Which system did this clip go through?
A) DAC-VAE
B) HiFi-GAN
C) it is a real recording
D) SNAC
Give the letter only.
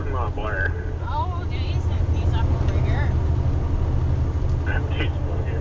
C